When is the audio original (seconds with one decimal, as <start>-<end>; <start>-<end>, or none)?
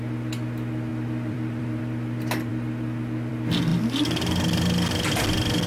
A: 0.0-0.9; 1.8-5.7